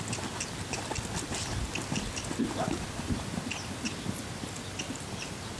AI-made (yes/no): no